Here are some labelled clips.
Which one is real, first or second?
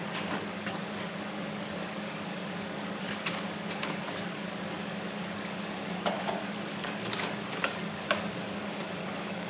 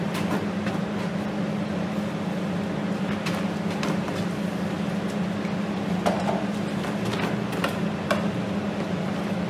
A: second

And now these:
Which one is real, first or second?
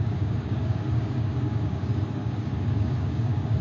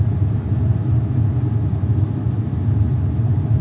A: second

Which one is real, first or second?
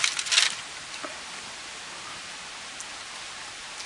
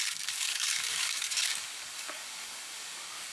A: first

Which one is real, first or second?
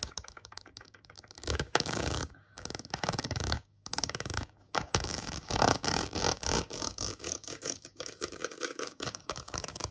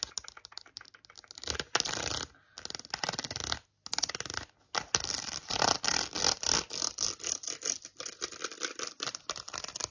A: second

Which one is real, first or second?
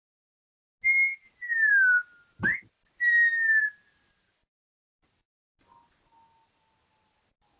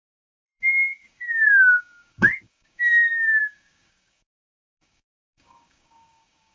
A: first